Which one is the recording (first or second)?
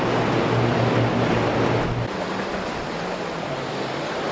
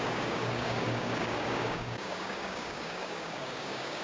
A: first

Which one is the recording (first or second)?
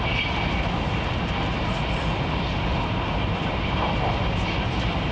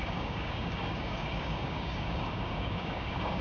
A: first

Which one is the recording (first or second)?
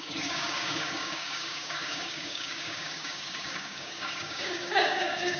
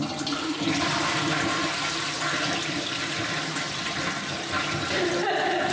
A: second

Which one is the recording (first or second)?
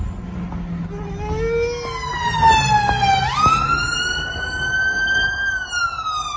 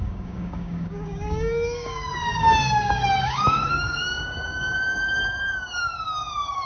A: first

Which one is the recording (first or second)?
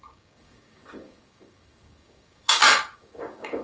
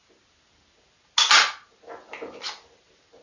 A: second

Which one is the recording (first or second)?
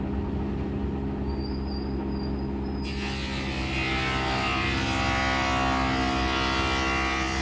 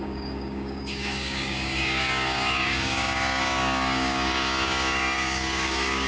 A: first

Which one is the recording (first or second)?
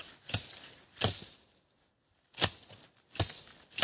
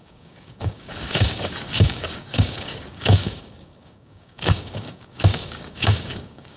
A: first